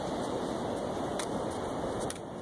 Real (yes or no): yes